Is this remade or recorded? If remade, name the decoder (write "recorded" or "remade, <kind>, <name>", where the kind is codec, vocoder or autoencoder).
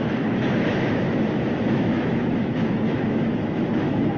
remade, autoencoder, DAC-VAE